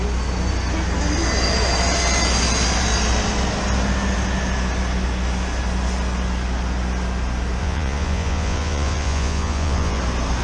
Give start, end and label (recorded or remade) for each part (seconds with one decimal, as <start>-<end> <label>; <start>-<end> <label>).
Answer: 0.0-7.6 recorded; 7.6-10.0 remade; 10.0-10.4 recorded